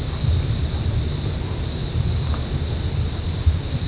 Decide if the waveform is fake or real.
real